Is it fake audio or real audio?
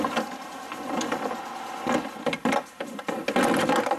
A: real